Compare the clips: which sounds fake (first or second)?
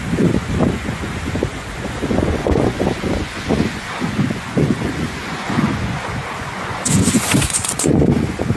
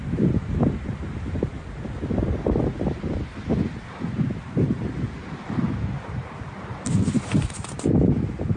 first